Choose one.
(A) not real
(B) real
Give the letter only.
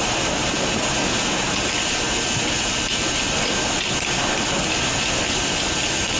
B